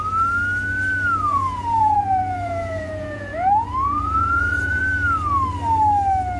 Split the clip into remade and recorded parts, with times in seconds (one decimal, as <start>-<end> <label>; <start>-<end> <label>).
0.0-1.3 recorded; 1.3-4.8 remade; 4.8-6.4 recorded